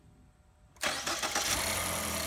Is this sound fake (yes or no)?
no